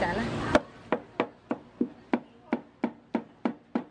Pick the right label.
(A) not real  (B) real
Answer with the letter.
B